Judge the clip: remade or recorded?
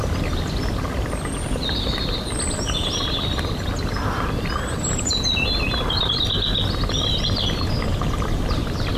recorded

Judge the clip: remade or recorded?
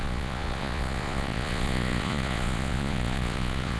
remade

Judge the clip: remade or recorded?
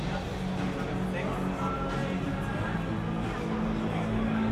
recorded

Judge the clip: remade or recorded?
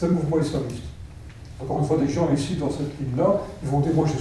remade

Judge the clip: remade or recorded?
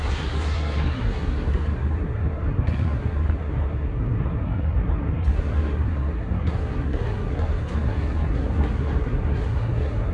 remade